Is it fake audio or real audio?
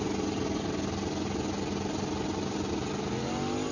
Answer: real